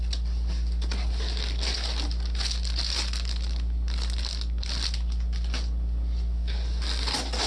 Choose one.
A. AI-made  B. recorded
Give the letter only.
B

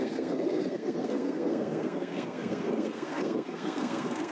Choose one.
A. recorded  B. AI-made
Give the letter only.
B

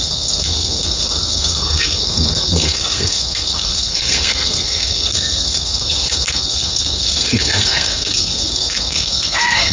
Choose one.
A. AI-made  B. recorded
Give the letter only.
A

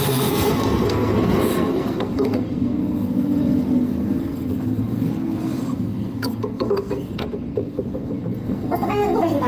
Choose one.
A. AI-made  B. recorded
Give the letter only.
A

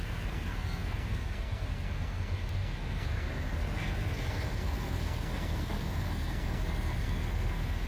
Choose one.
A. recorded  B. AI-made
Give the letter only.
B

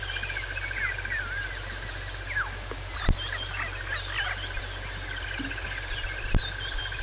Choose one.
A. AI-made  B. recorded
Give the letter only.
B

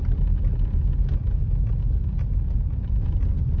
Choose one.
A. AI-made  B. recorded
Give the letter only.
B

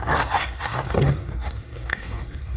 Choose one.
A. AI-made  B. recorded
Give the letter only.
A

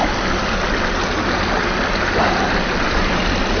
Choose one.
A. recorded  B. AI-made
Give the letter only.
A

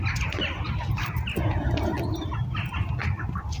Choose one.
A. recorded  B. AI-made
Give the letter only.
A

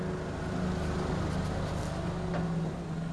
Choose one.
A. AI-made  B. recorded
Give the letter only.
B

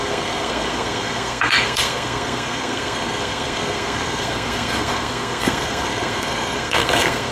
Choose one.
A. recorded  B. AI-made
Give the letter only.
B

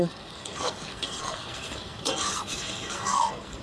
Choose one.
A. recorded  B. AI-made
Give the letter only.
B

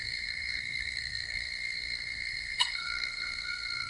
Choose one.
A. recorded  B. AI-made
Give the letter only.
B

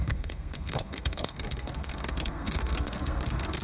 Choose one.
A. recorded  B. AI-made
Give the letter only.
B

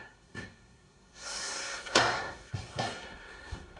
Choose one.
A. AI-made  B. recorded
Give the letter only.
A